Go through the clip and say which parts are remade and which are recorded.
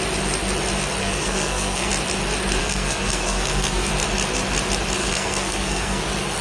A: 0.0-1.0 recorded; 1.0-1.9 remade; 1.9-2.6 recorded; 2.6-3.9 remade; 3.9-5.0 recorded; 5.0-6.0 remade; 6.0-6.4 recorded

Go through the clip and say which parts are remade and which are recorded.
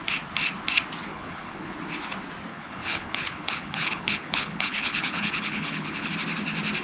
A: 0.0-1.1 recorded; 1.1-1.8 remade; 1.8-2.5 recorded; 2.5-6.1 remade; 6.1-6.8 recorded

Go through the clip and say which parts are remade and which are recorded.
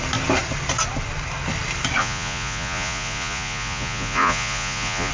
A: 0.0-2.0 recorded; 2.0-5.1 remade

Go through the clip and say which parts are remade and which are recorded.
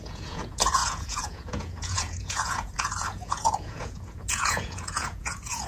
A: 0.0-5.7 remade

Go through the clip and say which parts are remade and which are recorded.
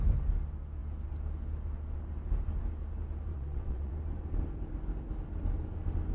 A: 0.0-3.3 recorded; 3.3-3.9 remade; 3.9-6.1 recorded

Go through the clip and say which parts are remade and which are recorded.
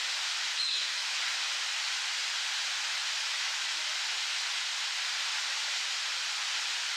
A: 0.0-0.5 recorded; 0.5-1.2 remade; 1.2-7.0 recorded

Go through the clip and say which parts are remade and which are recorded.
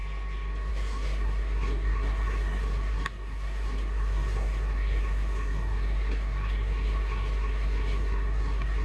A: 0.0-0.7 recorded; 0.7-8.8 remade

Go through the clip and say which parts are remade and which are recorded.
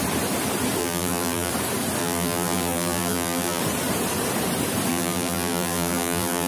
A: 0.0-0.8 recorded; 0.8-1.5 remade; 1.5-2.0 recorded; 2.0-3.6 remade; 3.6-4.9 recorded; 4.9-6.5 remade